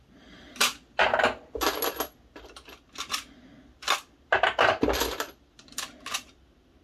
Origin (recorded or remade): recorded